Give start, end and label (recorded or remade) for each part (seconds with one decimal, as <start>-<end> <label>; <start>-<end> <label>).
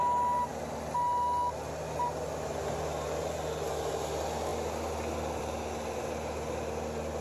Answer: 0.0-7.2 recorded